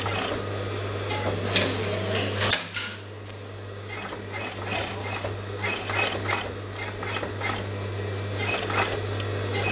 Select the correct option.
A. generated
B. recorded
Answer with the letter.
B